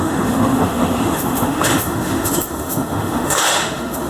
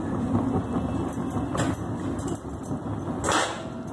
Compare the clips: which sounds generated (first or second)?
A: first